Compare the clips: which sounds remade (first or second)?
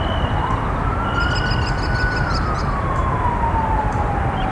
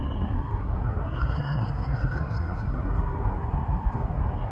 second